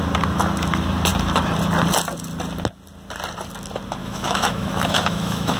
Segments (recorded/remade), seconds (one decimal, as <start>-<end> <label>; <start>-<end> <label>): 0.0-4.0 recorded; 4.0-5.6 remade